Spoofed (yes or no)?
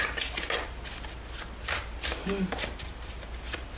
no